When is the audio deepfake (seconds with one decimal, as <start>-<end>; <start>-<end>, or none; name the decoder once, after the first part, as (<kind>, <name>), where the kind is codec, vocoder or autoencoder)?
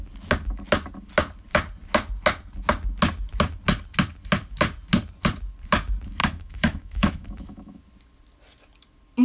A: 6.2-7.8 (autoencoder, DAC-VAE)